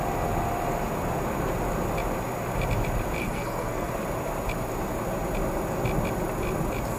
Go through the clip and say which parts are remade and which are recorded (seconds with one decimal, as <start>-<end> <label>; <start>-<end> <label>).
0.0-3.2 recorded; 3.2-3.9 remade; 3.9-7.0 recorded